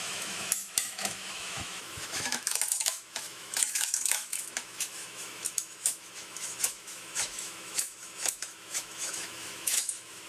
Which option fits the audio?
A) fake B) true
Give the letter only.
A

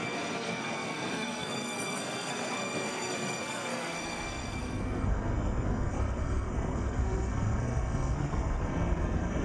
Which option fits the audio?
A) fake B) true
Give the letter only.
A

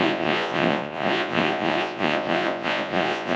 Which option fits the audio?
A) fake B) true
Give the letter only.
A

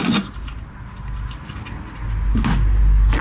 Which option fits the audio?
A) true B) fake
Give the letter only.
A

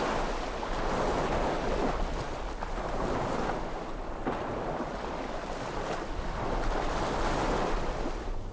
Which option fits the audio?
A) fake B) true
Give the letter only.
B